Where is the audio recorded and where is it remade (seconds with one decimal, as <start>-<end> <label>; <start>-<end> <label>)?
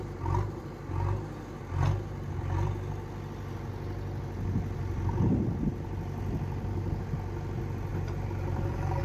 0.0-7.9 recorded; 7.9-9.0 remade